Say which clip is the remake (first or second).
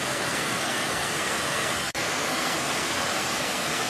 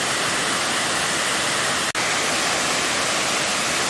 first